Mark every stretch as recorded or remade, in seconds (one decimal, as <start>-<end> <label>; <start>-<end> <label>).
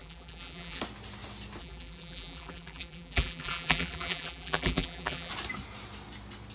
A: 0.0-0.8 remade; 0.8-1.6 recorded; 1.6-5.3 remade; 5.3-6.5 recorded